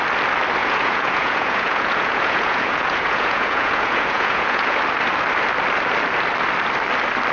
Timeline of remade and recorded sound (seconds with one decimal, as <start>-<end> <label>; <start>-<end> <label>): 0.0-0.6 recorded; 0.6-4.8 remade; 4.8-7.3 recorded